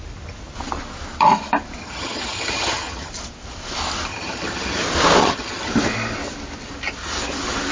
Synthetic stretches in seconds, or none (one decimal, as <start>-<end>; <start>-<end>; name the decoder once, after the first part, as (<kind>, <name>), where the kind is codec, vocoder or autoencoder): 1.8-3.1 (vocoder, HiFi-GAN); 4.1-4.8; 5.2-5.7